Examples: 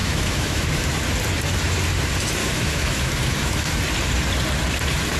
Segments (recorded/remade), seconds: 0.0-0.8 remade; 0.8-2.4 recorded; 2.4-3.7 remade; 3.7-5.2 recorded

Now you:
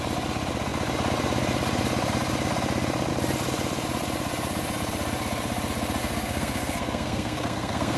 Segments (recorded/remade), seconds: 0.0-6.0 recorded; 6.0-8.0 remade

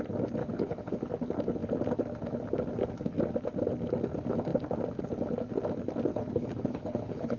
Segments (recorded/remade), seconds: 0.0-0.4 recorded; 0.4-0.9 remade; 0.9-6.1 recorded; 6.1-7.4 remade

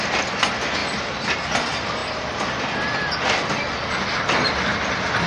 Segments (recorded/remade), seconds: 0.0-5.3 recorded